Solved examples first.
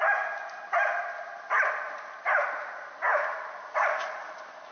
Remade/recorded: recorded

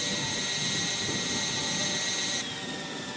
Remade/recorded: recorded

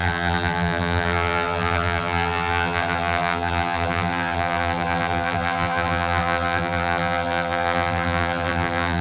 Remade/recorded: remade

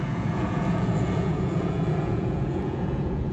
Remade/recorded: remade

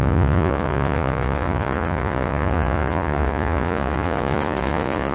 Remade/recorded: remade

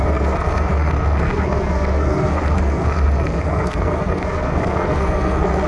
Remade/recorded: remade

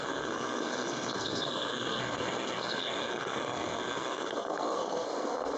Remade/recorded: remade